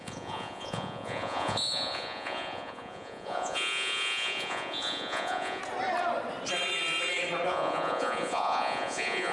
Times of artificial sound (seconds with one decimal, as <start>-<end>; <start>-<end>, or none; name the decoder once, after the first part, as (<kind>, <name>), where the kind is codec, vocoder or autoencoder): 0.0-5.6 (vocoder, Vocos); 7.5-9.3